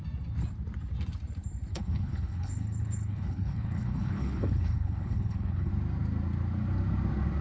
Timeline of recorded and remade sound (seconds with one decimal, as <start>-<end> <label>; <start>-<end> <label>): 0.0-1.7 recorded; 1.7-5.7 remade; 5.7-7.4 recorded